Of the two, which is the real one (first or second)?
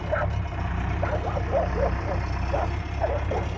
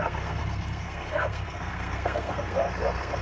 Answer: first